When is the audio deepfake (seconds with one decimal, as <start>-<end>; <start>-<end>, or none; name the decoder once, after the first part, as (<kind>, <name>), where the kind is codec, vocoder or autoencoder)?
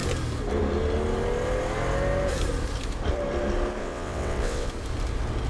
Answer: 3.8-4.7 (vocoder, WaveNeXt)